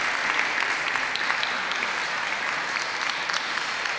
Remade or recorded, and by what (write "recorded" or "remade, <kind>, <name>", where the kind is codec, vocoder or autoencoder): recorded